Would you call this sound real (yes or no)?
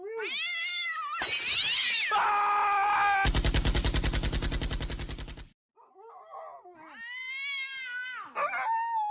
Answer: yes